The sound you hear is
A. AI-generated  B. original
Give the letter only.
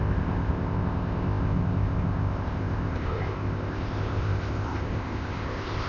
A